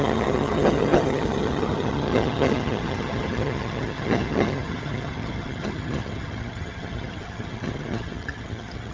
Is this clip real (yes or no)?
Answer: no